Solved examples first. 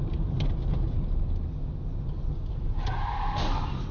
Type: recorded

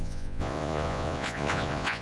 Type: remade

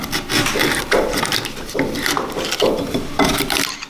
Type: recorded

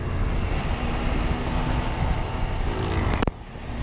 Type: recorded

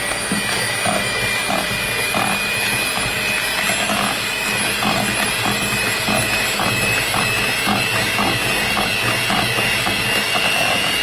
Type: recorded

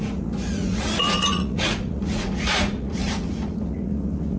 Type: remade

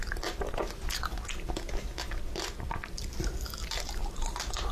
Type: recorded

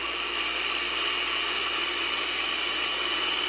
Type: recorded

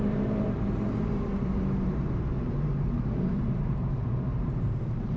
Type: remade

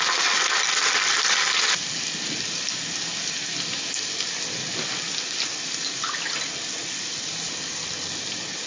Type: recorded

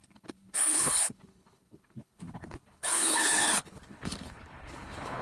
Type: remade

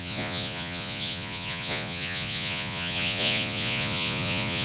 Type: remade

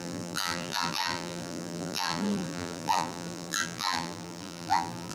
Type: remade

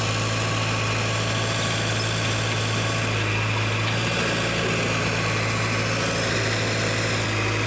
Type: recorded